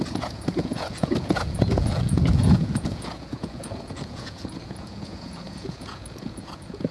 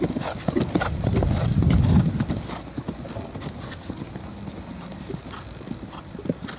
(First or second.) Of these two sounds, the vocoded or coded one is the first